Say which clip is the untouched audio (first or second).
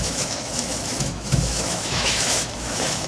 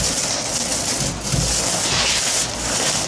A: second